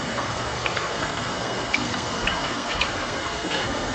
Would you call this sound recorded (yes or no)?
no